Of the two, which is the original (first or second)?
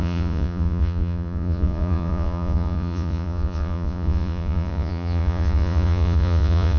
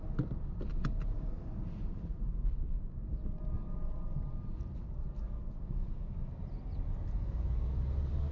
second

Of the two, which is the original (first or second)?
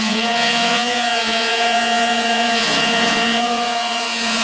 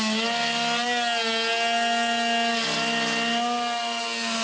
second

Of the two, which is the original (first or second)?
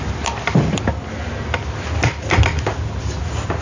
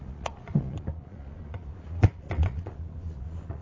first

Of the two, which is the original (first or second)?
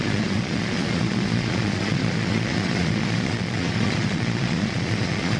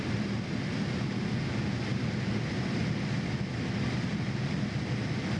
second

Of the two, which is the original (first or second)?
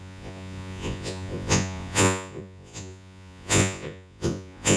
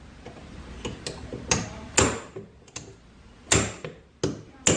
second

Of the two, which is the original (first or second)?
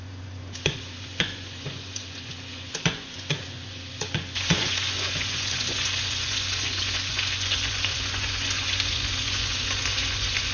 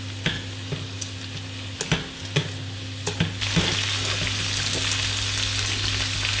second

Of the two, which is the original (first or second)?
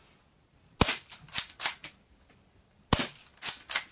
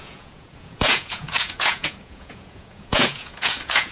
first